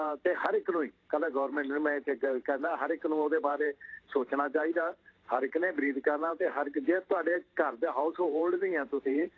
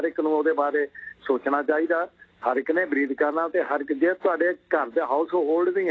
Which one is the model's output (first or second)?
first